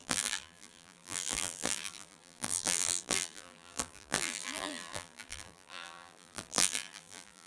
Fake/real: fake